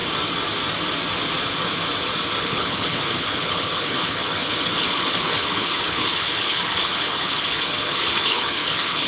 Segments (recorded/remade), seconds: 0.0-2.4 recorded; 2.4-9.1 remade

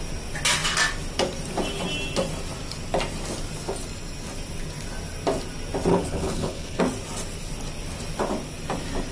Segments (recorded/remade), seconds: 0.0-5.9 recorded; 5.9-6.8 remade; 6.8-9.1 recorded

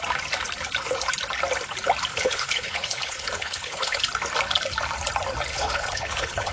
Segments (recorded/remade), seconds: 0.0-2.1 recorded; 2.1-4.0 remade; 4.0-5.5 recorded; 5.5-6.5 remade

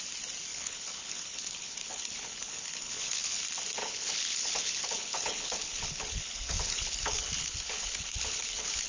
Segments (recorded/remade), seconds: 0.0-0.5 recorded; 0.5-3.4 remade; 3.4-3.8 recorded; 3.8-8.9 remade

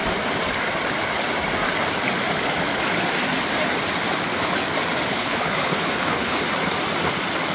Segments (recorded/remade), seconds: 0.0-5.1 recorded; 5.1-6.4 remade; 6.4-7.5 recorded

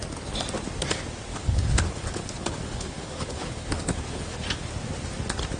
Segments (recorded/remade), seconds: 0.0-1.3 recorded; 1.3-4.7 remade; 4.7-5.6 recorded

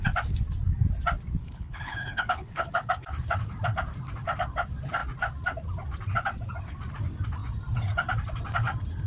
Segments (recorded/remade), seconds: 0.0-1.4 recorded; 1.4-2.7 remade; 2.7-9.1 recorded

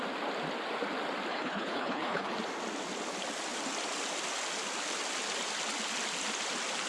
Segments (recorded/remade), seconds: 0.0-1.3 recorded; 1.3-2.3 remade; 2.3-6.9 recorded